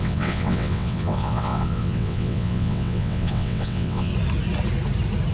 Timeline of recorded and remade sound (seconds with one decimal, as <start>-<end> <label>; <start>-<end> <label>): 0.0-4.1 remade; 4.1-5.3 recorded